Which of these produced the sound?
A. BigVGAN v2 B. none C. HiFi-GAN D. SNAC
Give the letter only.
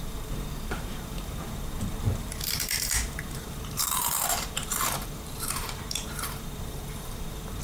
A